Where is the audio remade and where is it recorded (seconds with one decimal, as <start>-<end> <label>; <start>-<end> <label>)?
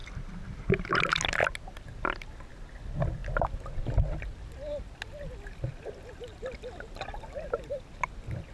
0.0-8.5 recorded